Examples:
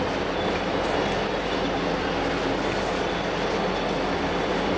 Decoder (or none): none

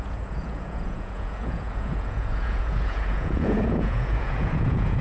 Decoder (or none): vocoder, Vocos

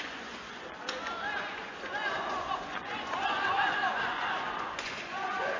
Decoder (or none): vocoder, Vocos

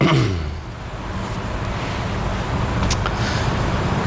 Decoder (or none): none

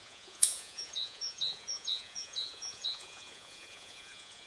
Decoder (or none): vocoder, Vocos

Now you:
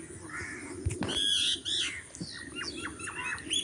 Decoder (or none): none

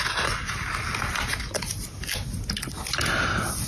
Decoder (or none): none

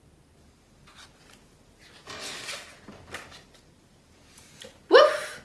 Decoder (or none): none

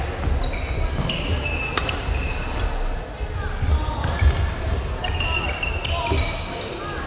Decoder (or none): none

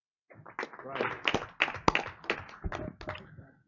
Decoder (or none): none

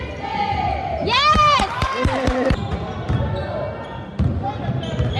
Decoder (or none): none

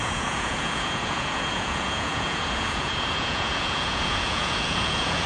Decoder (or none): vocoder, Vocos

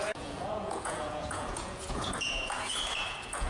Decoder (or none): vocoder, Vocos